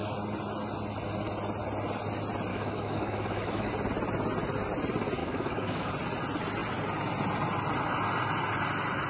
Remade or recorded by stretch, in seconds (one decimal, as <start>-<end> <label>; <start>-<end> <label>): 0.0-2.5 recorded; 2.5-3.7 remade; 3.7-5.2 recorded; 5.2-5.9 remade; 5.9-9.1 recorded